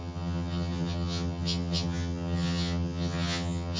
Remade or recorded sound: remade